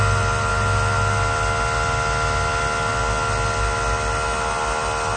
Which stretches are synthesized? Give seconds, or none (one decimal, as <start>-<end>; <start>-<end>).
none